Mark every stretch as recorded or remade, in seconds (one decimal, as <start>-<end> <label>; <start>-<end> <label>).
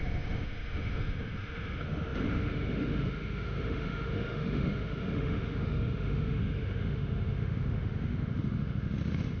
0.0-9.4 remade